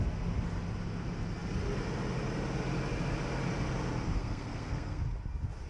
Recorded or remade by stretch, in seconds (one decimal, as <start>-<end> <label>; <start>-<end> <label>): 0.0-4.2 recorded; 4.2-5.0 remade; 5.0-5.7 recorded